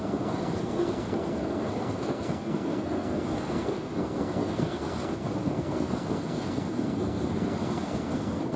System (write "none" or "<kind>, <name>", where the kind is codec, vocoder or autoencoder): codec, SNAC